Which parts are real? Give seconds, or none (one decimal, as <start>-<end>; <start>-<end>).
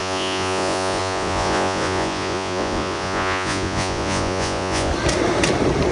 4.9-5.9